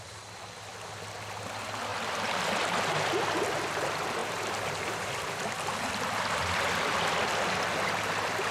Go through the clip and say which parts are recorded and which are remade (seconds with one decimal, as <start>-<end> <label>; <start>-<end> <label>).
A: 0.0-1.9 recorded; 1.9-2.5 remade; 2.5-4.2 recorded; 4.2-5.1 remade; 5.1-8.5 recorded